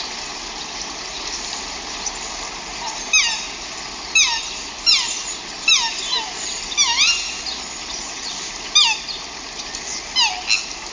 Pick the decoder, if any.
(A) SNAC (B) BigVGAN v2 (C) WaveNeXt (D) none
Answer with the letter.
D